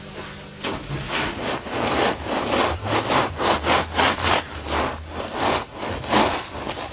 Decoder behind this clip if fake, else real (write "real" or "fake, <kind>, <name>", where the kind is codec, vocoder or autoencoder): real